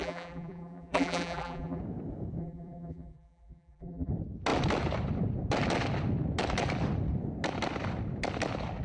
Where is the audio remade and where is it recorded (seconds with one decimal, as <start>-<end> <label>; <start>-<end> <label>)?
0.0-1.8 remade; 1.8-2.4 recorded; 2.4-4.1 remade; 4.1-8.8 recorded